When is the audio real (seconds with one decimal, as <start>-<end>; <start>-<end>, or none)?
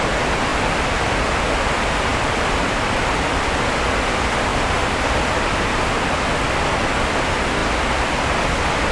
0.0-2.1; 3.0-8.9